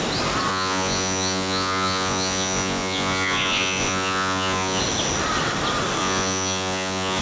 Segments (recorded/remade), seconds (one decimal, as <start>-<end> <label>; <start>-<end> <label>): 0.0-0.5 recorded; 0.5-4.8 remade; 4.8-6.0 recorded; 6.0-7.2 remade